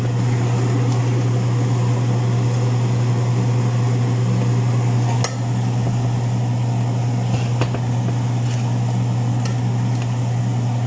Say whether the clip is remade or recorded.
recorded